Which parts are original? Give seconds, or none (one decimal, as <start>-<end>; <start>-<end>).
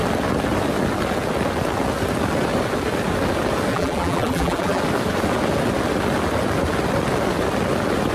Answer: 0.0-3.7; 4.8-8.1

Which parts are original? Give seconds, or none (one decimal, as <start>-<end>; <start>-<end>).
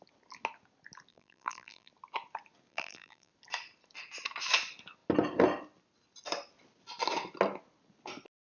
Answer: 0.0-1.1; 1.9-2.7; 3.3-8.5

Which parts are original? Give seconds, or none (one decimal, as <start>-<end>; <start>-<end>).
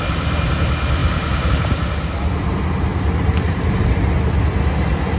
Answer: 0.0-2.9; 3.8-5.2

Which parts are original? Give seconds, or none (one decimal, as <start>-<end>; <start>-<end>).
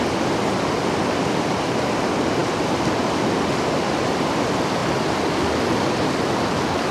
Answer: 0.0-6.9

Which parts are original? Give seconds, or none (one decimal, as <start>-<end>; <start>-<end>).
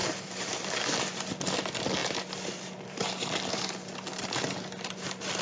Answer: 0.0-5.4